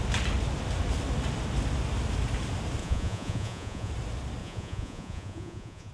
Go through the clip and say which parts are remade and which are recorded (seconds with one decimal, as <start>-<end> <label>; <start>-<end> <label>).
0.0-2.8 recorded; 2.8-3.9 remade; 3.9-4.4 recorded; 4.4-5.9 remade

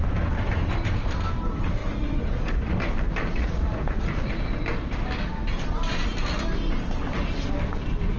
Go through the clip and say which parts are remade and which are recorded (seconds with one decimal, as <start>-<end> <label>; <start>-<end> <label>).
0.0-1.8 recorded; 1.8-2.7 remade; 2.7-3.4 recorded; 3.4-4.3 remade; 4.3-8.2 recorded

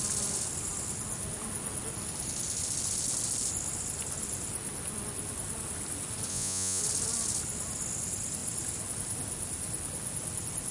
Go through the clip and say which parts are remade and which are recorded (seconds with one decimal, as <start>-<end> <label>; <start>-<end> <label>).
0.0-6.3 recorded; 6.3-6.8 remade; 6.8-10.7 recorded

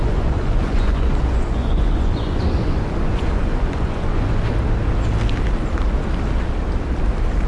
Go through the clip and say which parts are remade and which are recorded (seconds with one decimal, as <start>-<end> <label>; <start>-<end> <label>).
0.0-4.5 remade; 4.5-7.5 recorded

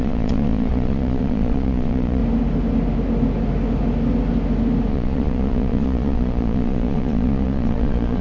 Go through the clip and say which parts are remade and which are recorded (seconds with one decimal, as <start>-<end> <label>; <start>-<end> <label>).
0.0-2.2 remade; 2.2-4.9 recorded; 4.9-8.2 remade